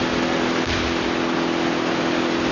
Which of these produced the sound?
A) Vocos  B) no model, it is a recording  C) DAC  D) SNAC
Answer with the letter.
B